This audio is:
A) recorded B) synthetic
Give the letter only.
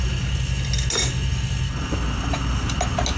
A